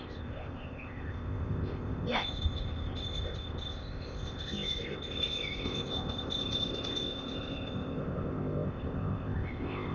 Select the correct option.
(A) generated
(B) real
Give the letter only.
A